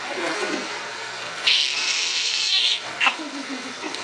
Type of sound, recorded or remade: remade